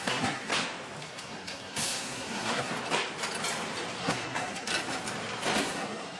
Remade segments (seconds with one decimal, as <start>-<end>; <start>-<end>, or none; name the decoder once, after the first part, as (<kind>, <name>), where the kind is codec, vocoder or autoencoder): 0.0-0.5 (codec, SNAC); 1.0-2.7; 4.0-4.7; 5.6-6.2